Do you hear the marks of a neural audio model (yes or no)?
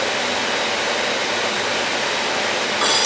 no